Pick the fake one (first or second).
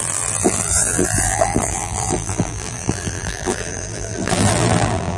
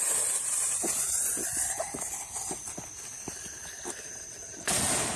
first